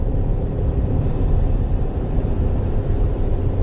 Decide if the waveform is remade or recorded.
remade